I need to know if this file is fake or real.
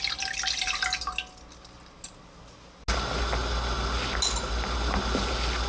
real